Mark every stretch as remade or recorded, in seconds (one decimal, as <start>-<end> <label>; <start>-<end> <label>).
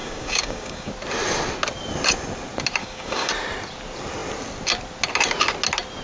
0.0-0.9 remade; 0.9-2.8 recorded; 2.8-3.3 remade; 3.3-6.0 recorded